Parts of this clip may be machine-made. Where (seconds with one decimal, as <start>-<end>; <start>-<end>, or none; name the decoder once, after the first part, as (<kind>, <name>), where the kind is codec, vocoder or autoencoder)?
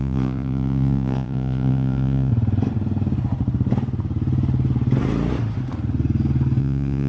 0.0-2.3 (vocoder, Vocos); 6.6-7.1